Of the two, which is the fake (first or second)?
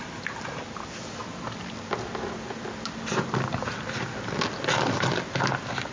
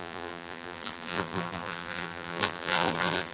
second